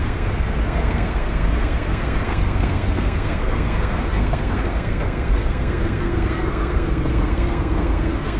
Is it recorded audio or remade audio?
remade